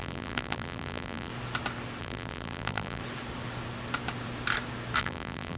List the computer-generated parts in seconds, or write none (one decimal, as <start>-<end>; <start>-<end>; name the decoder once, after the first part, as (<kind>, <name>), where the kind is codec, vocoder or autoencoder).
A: 0.0-1.3 (vocoder, BigVGAN v2); 2.0-3.0; 5.0-5.6